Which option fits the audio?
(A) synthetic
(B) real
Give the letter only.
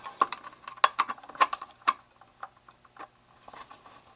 B